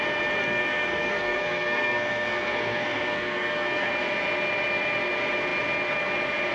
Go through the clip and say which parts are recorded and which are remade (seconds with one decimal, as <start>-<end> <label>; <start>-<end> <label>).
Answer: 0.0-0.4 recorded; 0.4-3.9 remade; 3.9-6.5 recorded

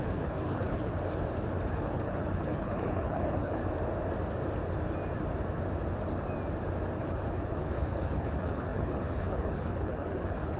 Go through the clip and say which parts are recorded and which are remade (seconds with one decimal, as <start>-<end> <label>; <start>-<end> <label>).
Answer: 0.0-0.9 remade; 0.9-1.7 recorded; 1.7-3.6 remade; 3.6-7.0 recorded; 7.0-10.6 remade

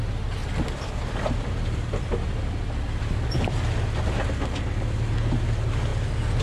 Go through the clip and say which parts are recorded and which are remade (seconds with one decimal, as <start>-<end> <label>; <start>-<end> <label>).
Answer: 0.0-0.4 recorded; 0.4-4.0 remade; 4.0-5.9 recorded; 5.9-6.4 remade